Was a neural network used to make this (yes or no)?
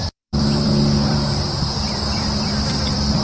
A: yes